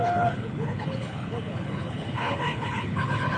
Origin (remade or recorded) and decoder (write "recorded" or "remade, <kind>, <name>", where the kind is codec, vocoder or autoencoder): remade, codec, HILCodec